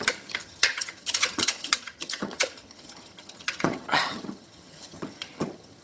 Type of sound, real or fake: fake